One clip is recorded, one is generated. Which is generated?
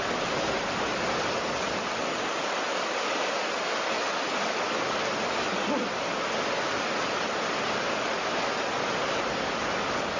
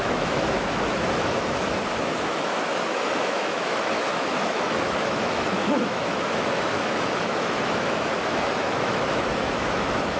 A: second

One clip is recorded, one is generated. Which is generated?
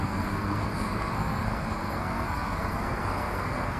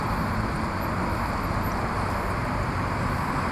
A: first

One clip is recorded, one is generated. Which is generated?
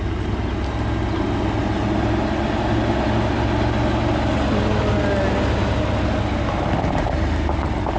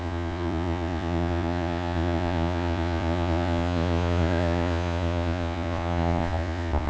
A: second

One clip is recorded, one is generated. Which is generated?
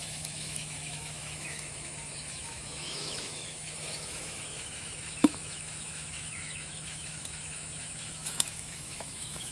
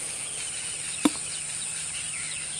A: first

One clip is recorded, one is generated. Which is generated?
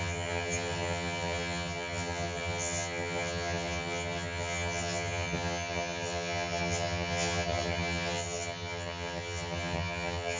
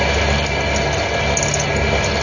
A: first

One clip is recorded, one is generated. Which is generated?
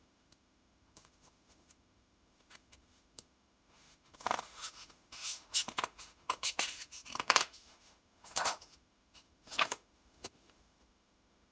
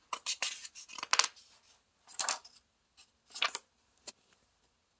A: first